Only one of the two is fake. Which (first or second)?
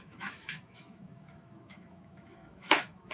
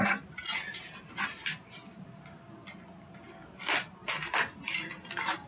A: first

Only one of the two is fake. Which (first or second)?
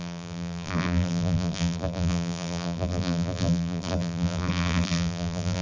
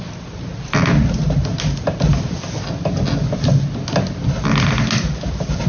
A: first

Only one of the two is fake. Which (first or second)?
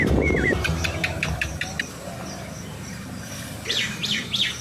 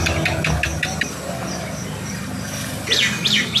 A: first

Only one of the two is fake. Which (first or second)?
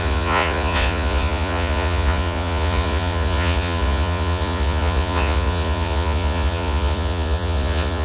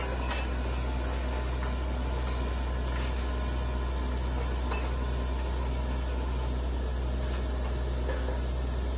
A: first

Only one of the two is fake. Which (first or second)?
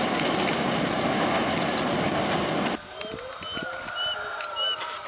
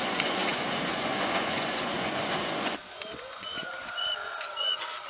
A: second